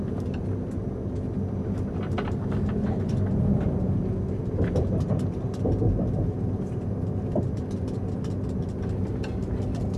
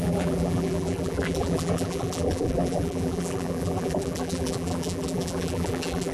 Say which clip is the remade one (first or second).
second